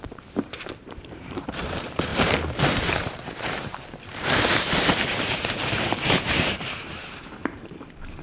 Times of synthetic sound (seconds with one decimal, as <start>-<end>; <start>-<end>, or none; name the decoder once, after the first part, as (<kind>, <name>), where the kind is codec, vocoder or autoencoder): 0.0-8.2 (vocoder, BigVGAN v2)